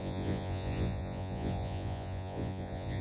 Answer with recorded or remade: remade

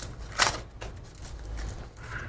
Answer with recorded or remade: recorded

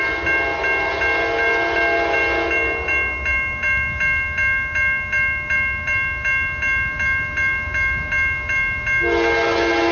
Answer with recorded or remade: recorded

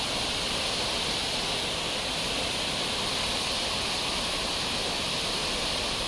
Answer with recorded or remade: recorded